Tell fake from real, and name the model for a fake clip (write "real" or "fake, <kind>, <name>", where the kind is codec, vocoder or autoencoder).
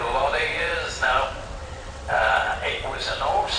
fake, vocoder, WaveNeXt